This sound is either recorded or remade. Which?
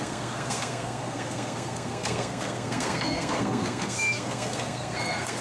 remade